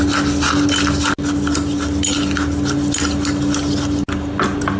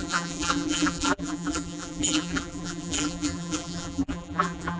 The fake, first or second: second